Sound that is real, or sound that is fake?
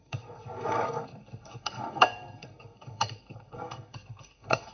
fake